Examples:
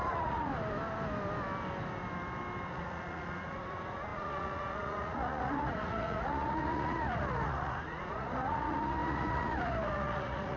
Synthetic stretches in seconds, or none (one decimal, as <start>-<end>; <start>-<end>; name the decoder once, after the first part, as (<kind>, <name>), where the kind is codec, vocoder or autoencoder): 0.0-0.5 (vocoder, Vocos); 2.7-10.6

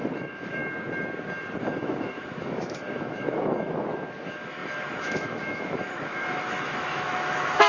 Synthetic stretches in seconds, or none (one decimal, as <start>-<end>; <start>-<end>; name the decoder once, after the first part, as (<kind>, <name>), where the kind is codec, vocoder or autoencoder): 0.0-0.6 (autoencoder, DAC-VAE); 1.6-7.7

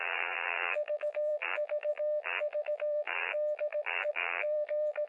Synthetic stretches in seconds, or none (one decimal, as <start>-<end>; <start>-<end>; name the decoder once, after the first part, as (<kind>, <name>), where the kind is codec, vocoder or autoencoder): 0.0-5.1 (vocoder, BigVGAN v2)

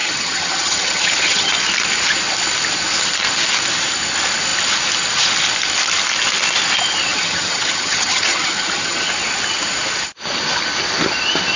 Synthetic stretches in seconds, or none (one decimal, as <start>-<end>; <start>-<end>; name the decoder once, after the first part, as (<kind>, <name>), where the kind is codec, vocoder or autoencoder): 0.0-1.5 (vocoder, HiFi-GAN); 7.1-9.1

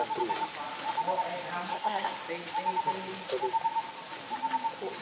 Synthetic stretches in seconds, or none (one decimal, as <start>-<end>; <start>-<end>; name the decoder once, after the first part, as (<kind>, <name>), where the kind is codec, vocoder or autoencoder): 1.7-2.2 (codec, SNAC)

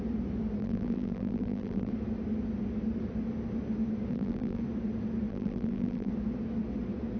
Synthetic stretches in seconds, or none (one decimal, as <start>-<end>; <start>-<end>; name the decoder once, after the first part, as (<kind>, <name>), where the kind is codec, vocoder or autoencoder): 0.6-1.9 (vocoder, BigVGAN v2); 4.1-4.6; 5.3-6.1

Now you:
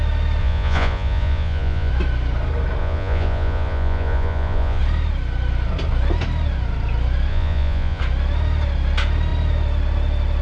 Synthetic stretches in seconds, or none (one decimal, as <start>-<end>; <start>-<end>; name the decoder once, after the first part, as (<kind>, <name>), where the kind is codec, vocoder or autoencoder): 0.4-1.9 (vocoder, Vocos); 2.8-4.8; 7.3-8.0

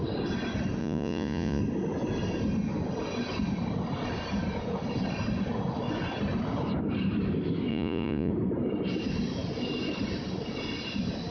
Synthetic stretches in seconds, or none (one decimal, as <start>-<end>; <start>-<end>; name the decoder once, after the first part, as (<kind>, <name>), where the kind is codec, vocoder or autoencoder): 0.8-1.6 (vocoder, Vocos); 7.7-8.3